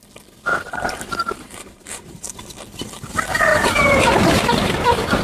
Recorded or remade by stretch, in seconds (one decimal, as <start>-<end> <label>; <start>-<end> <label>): 0.0-0.5 recorded; 0.5-2.4 remade; 2.4-3.5 recorded; 3.5-5.2 remade